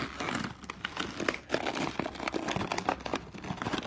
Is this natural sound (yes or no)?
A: yes